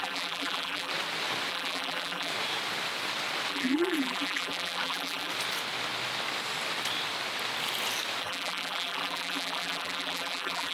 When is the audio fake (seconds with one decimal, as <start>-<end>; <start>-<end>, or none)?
0.0-0.9; 1.5-2.3; 3.5-5.3; 8.2-10.7